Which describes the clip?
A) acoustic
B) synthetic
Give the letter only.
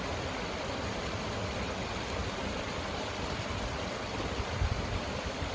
A